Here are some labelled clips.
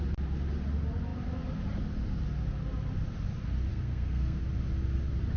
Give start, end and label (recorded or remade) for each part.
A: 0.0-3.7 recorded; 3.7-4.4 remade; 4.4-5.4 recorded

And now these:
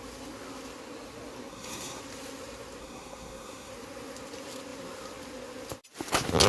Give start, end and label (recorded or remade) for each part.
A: 0.0-1.5 recorded; 1.5-2.0 remade; 2.0-2.8 recorded; 2.8-3.7 remade; 3.7-6.5 recorded